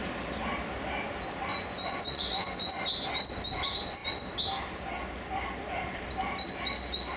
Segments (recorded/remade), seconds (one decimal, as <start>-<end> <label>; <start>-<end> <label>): 0.0-1.5 recorded; 1.5-2.8 remade; 2.8-7.2 recorded